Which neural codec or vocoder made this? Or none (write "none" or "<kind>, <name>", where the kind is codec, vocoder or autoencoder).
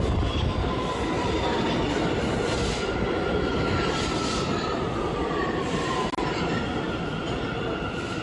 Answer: none